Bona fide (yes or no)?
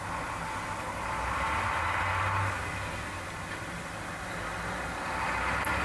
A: yes